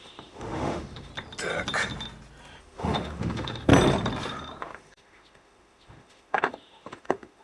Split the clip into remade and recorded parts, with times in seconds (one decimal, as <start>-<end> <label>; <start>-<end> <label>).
0.0-1.1 remade; 1.1-2.6 recorded; 2.6-3.7 remade; 3.7-4.6 recorded; 4.6-7.4 remade